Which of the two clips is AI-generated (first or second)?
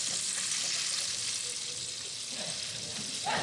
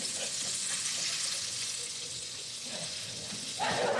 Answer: second